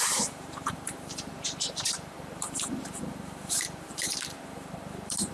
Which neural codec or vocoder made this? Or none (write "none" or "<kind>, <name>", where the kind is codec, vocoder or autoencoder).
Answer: vocoder, BigVGAN v2